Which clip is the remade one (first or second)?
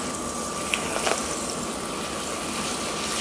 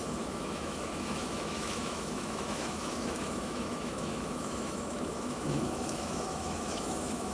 second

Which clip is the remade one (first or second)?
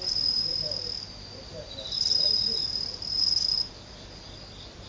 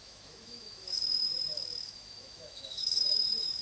second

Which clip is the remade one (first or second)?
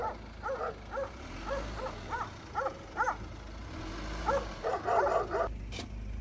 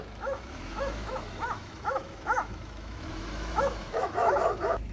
second